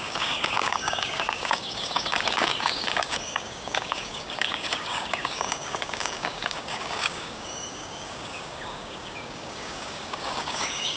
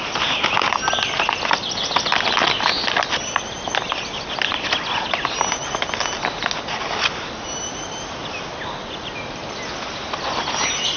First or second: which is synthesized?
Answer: first